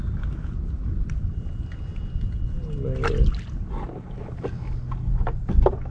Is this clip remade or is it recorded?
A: recorded